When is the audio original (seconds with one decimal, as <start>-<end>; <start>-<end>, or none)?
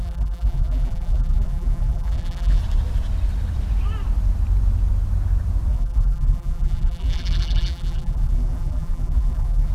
2.6-5.7